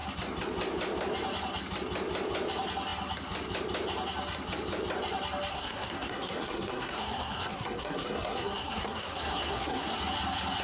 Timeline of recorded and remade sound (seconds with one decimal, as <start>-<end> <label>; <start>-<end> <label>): 0.0-5.5 recorded; 5.5-10.0 remade; 10.0-10.6 recorded